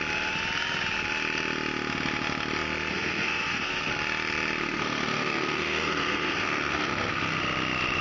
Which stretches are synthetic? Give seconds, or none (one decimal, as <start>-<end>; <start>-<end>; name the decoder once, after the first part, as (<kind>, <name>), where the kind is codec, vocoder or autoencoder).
2.9-3.9 (codec, SNAC); 4.6-7.4